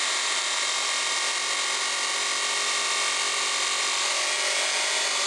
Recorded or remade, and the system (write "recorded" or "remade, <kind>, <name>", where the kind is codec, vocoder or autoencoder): recorded